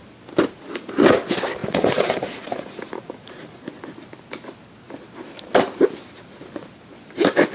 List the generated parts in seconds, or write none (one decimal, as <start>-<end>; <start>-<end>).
1.6-3.6